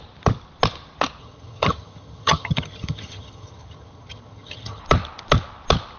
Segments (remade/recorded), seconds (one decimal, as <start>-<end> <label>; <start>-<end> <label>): 0.0-1.2 recorded; 1.2-4.8 remade; 4.8-6.0 recorded